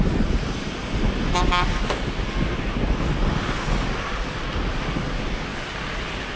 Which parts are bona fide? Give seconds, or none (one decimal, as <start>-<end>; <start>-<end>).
0.0-6.4